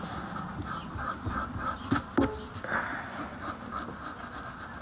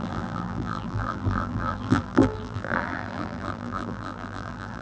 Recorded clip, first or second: first